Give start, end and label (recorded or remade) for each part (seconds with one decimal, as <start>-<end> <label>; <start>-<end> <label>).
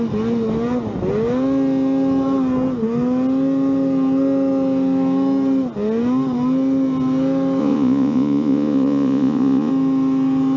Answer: 0.0-7.6 recorded; 7.6-9.7 remade; 9.7-10.6 recorded